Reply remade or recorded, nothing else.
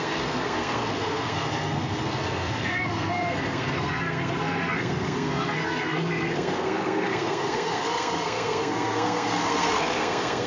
remade